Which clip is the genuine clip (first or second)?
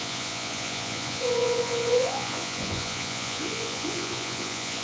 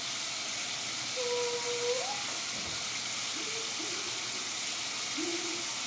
second